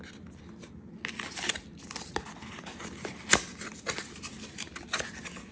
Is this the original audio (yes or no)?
yes